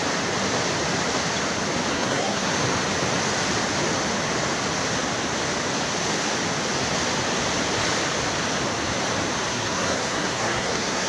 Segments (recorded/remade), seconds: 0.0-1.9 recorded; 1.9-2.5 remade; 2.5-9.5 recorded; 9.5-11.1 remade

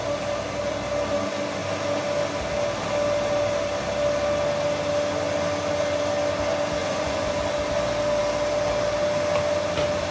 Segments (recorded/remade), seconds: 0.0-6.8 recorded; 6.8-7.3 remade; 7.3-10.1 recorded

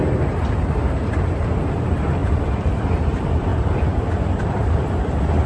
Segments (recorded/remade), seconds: 0.0-5.5 remade

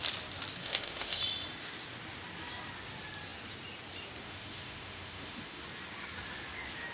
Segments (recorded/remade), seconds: 0.0-0.6 recorded; 0.6-1.2 remade; 1.2-4.2 recorded; 4.2-5.6 remade; 5.6-6.9 recorded

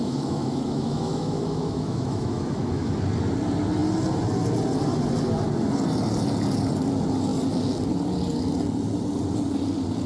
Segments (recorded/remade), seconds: 0.0-2.9 remade; 2.9-10.1 recorded

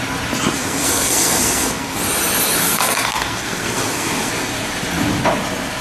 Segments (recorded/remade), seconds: 0.0-0.6 recorded; 0.6-2.0 remade; 2.0-2.6 recorded; 2.6-4.3 remade; 4.3-5.8 recorded

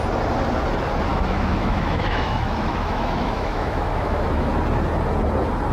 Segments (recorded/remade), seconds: 0.0-1.1 recorded; 1.1-4.5 remade; 4.5-5.7 recorded